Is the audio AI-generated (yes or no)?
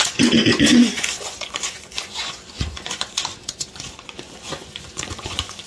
yes